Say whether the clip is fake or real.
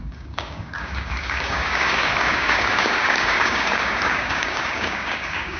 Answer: fake